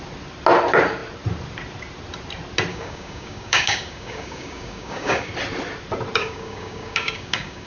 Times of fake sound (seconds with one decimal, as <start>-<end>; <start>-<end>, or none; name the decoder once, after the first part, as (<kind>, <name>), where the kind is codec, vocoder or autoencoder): 2.7-5.3 (codec, DAC); 6.2-7.7